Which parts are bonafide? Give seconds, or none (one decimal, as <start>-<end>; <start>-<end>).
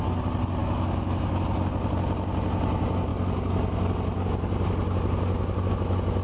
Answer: 0.0-0.6; 1.3-6.2